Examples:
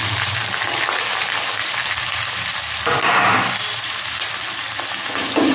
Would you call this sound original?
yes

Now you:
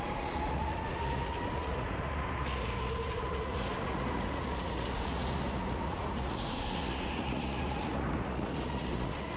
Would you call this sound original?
no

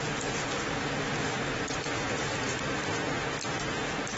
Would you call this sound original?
yes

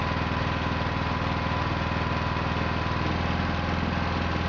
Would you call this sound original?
yes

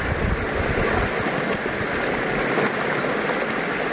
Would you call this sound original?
yes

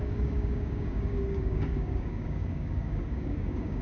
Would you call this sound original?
no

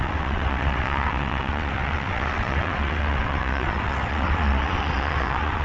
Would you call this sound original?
no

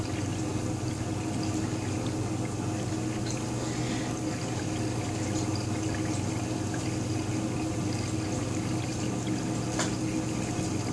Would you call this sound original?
yes